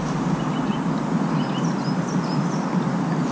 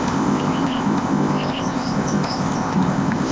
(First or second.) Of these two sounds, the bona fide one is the first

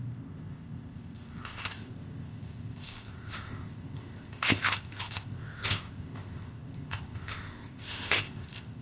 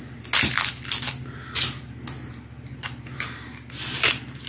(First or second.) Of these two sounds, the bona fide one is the second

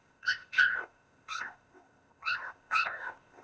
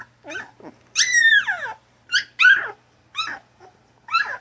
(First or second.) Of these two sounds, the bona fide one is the second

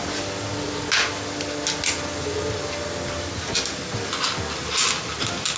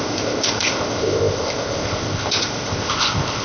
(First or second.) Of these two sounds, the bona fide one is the first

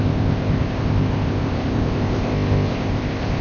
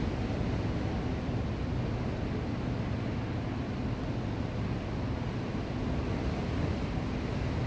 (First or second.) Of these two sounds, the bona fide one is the second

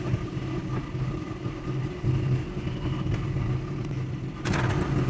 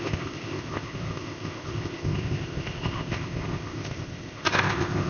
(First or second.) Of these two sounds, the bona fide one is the first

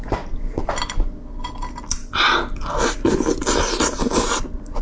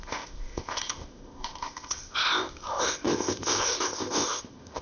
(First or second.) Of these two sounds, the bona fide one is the first